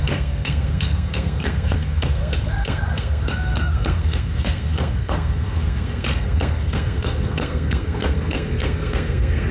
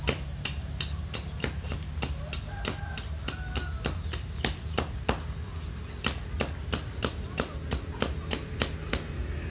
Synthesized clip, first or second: first